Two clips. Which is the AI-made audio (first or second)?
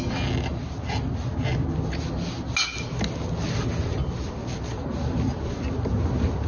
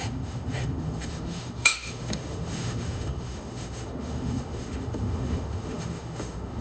second